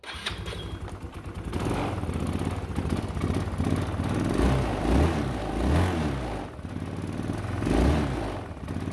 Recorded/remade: recorded